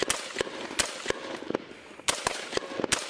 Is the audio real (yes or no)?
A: yes